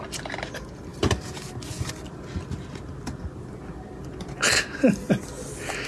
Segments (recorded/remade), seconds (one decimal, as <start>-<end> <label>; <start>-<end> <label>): 0.0-5.9 recorded